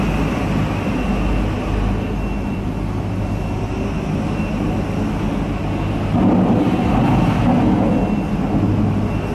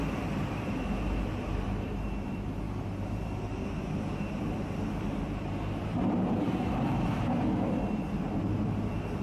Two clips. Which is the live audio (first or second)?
first